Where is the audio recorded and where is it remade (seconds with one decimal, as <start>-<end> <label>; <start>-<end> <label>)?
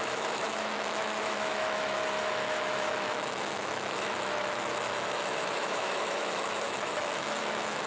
0.0-7.9 remade